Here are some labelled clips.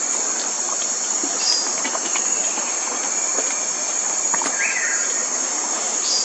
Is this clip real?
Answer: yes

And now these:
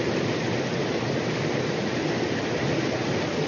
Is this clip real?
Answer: yes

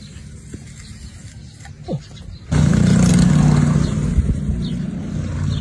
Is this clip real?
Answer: yes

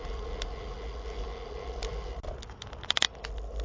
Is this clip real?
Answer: yes